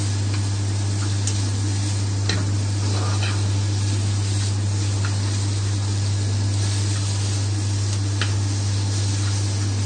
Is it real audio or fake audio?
real